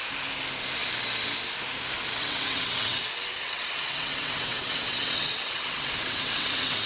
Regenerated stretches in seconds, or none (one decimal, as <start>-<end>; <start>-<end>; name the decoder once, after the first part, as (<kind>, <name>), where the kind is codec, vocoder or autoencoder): 2.2-6.9 (vocoder, WaveNeXt)